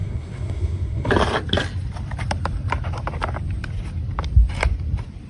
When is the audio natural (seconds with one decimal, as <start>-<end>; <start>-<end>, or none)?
1.1-5.3